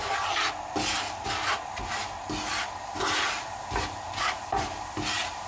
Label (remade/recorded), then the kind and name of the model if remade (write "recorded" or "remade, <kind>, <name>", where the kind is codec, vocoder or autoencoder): recorded